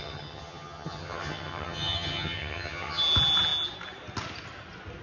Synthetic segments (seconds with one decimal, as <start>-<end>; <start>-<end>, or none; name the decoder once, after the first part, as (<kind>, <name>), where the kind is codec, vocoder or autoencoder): 0.0-3.0 (vocoder, HiFi-GAN)